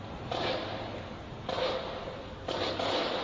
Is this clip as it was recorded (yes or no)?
yes